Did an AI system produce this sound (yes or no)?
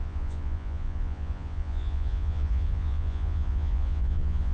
yes